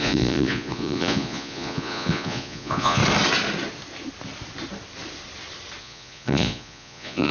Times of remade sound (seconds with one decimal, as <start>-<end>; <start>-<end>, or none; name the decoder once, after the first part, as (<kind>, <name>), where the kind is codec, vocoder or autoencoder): 0.0-3.0 (vocoder, Vocos); 5.8-7.3